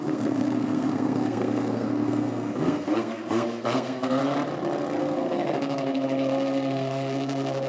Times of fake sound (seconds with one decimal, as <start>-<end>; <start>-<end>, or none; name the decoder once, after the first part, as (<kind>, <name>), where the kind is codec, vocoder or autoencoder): 0.0-4.2 (codec, SNAC); 5.0-7.7